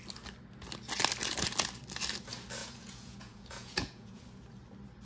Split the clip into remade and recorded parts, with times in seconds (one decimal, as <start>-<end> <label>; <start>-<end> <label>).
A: 0.0-2.6 recorded; 2.6-4.2 remade; 4.2-5.0 recorded